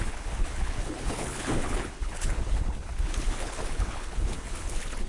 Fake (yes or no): yes